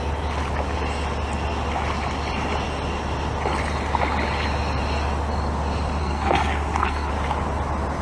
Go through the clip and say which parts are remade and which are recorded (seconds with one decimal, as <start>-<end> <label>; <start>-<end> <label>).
0.0-6.0 recorded; 6.0-7.1 remade; 7.1-8.0 recorded